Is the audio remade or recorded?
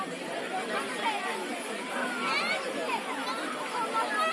recorded